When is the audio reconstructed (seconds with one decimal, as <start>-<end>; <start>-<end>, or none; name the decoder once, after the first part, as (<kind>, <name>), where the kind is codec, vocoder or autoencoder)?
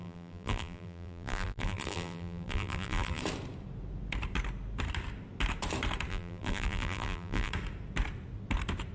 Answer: 0.0-3.2 (vocoder, BigVGAN v2); 6.1-7.5